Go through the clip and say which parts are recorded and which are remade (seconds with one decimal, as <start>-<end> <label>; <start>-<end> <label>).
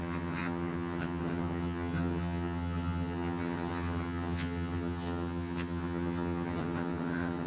0.0-7.5 remade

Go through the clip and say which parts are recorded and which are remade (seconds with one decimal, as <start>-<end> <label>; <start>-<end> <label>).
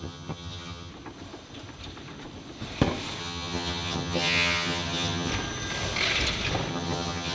0.0-0.9 remade; 0.9-3.2 recorded; 3.2-5.3 remade; 5.3-6.7 recorded; 6.7-7.3 remade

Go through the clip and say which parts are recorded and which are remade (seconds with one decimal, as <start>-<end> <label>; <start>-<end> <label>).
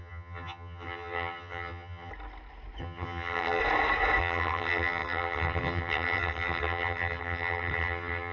0.0-2.1 remade; 2.1-2.8 recorded; 2.8-3.6 remade; 3.6-4.2 recorded; 4.2-8.3 remade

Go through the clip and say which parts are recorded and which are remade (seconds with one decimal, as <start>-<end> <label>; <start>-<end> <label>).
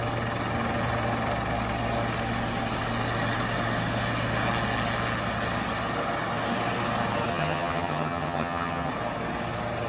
0.0-7.3 recorded; 7.3-8.9 remade; 8.9-9.9 recorded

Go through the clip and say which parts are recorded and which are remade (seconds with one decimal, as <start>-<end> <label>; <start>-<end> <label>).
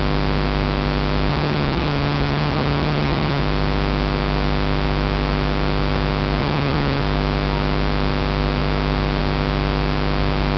0.0-1.3 recorded; 1.3-3.4 remade; 3.4-6.4 recorded; 6.4-7.0 remade; 7.0-10.6 recorded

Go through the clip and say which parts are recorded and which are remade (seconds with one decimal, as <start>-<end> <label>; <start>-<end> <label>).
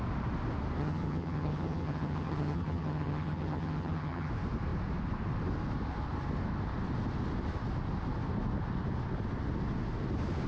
0.0-0.8 recorded; 0.8-4.3 remade; 4.3-10.5 recorded